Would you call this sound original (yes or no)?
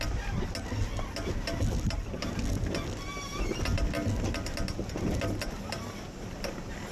yes